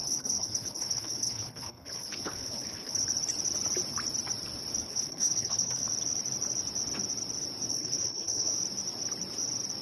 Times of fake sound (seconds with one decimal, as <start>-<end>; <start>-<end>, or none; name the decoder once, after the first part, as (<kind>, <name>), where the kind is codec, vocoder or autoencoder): 0.0-3.0 (codec, HILCodec); 4.8-5.8; 7.7-8.5

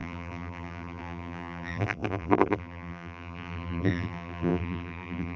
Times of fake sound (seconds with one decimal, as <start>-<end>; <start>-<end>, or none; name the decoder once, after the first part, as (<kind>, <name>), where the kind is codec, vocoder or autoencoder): 0.0-5.4 (vocoder, BigVGAN v2)

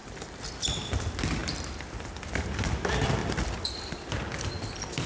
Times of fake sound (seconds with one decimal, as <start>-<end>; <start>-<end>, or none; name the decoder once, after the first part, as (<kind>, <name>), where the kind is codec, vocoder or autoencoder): 0.0-0.5 (vocoder, BigVGAN v2); 1.4-1.9; 3.2-4.1

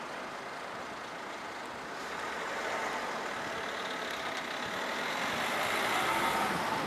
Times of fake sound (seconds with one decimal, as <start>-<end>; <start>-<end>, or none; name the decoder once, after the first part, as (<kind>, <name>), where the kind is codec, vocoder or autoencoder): none